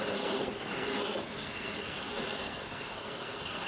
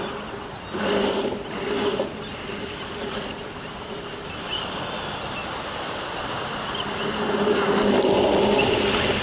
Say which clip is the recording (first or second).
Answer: second